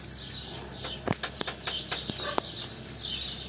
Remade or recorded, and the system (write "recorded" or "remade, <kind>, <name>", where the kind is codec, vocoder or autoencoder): recorded